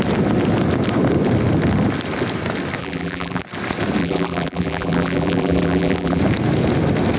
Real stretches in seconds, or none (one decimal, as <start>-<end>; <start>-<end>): 0.0-2.8; 3.4-4.0; 6.2-7.2